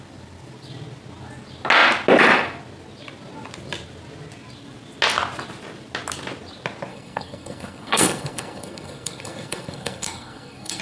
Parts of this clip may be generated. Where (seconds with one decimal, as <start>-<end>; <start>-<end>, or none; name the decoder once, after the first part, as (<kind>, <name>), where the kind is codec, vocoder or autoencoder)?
6.9-10.8 (codec, SNAC)